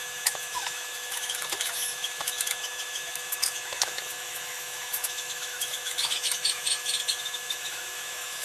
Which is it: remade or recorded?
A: remade